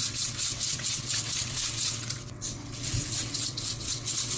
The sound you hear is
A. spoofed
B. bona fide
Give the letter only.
A